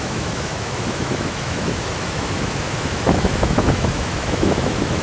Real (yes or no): no